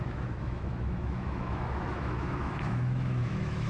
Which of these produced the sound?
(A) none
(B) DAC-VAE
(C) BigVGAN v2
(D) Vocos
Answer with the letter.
B